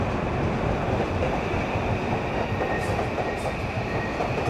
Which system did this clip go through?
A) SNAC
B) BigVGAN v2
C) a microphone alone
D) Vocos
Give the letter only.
C